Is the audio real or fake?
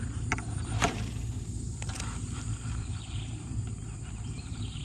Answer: fake